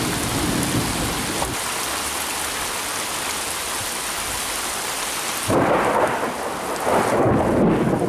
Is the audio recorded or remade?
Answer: recorded